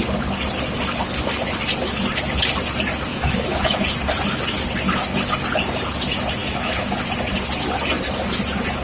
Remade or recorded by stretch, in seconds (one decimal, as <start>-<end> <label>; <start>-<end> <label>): 0.0-3.1 recorded; 3.1-3.8 remade; 3.8-6.4 recorded; 6.4-6.9 remade; 6.9-8.8 recorded